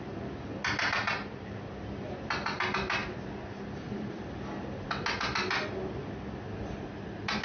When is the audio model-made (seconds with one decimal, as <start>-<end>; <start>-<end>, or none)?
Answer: 1.0-2.2; 3.0-4.2